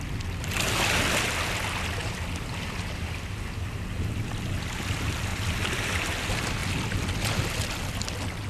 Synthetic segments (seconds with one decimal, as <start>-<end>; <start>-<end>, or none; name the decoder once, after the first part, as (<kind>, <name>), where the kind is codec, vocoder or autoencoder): 2.0-3.0 (vocoder, BigVGAN v2); 5.3-5.9; 6.6-7.2